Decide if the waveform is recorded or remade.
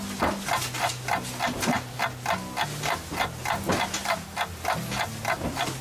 recorded